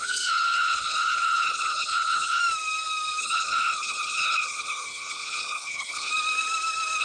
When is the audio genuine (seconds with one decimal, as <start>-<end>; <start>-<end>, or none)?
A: 2.4-3.2; 6.1-7.0